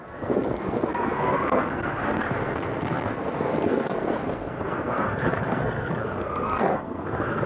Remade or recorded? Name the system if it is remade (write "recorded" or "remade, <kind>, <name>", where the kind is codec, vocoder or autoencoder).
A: remade, codec, SNAC